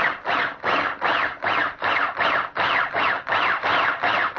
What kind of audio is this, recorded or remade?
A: recorded